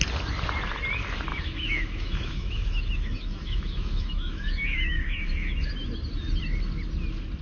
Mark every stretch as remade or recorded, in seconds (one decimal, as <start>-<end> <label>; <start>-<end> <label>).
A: 0.0-1.3 recorded; 1.3-5.7 remade; 5.7-7.4 recorded